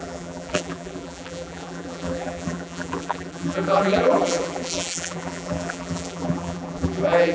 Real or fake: fake